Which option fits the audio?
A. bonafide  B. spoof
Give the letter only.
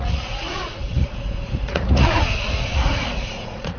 B